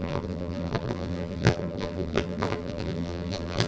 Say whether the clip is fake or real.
fake